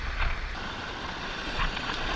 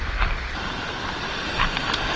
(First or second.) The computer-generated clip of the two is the first